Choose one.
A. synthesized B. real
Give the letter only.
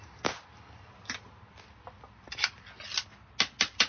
B